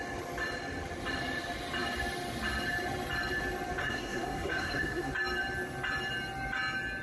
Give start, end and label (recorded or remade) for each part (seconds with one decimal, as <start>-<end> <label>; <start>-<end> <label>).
0.0-3.8 recorded; 3.8-5.1 remade; 5.1-7.0 recorded